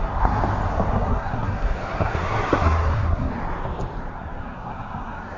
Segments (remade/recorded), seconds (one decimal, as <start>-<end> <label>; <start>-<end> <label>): 0.0-0.4 remade; 0.4-0.9 recorded; 0.9-3.3 remade; 3.3-4.1 recorded; 4.1-5.4 remade